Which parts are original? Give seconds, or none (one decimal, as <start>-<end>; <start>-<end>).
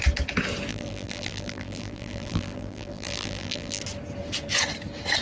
0.0-0.7; 3.8-5.2